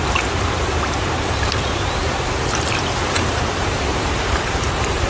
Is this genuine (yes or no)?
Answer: no